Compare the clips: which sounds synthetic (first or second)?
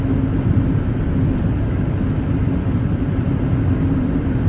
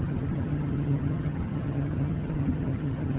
second